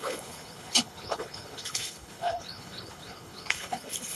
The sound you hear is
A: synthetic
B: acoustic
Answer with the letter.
A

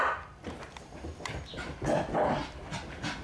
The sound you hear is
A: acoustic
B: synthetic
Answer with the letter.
A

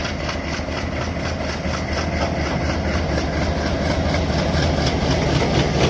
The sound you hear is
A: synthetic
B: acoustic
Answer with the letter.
B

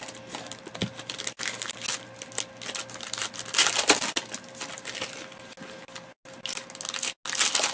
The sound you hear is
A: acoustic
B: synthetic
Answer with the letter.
A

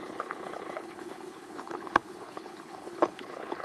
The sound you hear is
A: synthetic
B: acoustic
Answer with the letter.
A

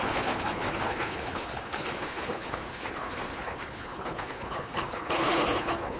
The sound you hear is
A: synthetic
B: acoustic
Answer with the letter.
A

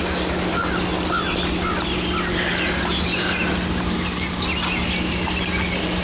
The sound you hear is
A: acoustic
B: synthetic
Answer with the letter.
A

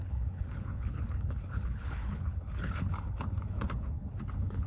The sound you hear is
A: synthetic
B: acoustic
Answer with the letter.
A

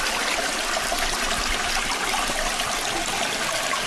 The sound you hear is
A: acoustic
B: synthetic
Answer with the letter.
A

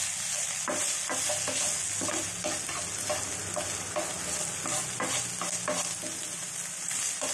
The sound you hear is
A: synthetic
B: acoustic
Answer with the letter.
B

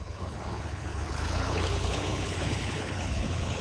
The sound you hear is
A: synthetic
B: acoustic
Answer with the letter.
A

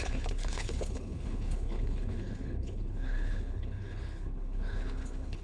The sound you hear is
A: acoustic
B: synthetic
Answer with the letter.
B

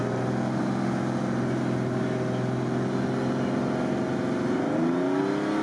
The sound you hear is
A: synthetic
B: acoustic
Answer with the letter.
B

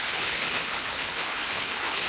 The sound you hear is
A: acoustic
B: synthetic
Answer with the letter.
B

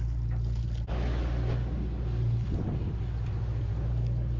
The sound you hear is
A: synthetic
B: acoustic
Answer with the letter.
B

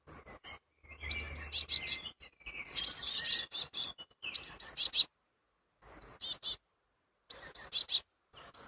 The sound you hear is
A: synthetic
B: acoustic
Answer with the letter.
B